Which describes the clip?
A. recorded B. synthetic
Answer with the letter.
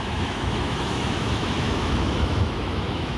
B